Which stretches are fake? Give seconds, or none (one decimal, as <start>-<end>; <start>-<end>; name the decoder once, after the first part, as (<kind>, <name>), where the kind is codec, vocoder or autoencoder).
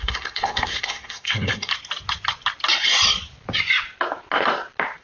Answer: 0.0-1.7 (codec, SNAC)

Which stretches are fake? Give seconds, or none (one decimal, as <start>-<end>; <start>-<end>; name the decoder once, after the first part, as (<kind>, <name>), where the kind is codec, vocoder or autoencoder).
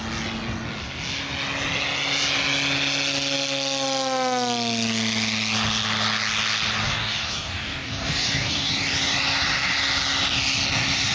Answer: 6.8-8.7 (codec, DAC)